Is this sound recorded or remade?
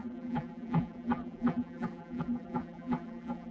remade